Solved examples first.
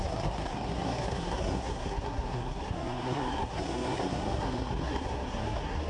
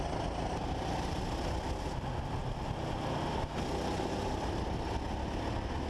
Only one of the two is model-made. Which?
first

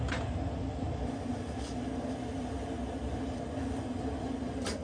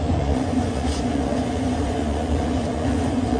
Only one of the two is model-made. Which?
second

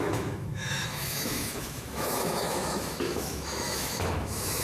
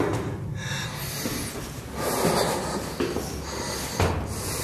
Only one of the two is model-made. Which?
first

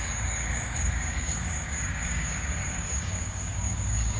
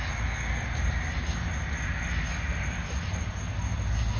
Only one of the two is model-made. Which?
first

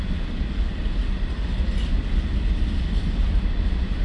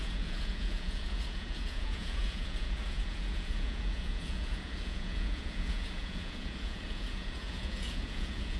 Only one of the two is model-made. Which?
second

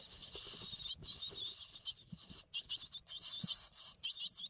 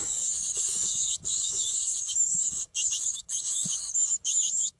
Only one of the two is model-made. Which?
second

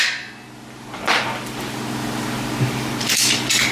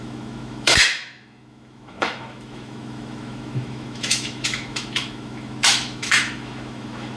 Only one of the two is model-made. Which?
second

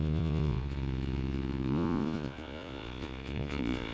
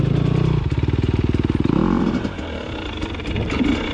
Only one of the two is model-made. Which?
first